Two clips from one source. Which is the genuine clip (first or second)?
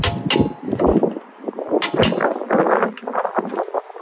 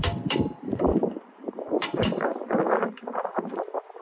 first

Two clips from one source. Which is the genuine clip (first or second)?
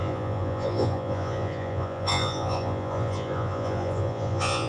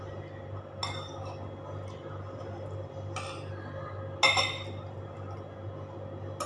second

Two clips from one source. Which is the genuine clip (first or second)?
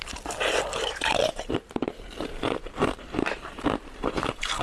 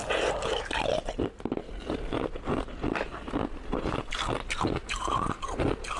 second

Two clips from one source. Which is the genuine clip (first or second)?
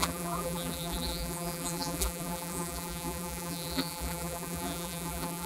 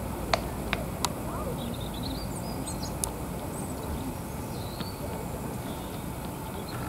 second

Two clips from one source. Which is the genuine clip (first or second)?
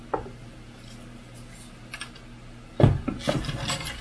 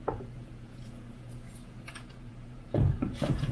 first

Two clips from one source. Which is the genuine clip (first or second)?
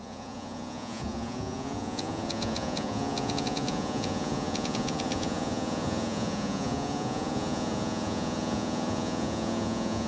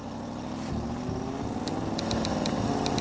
second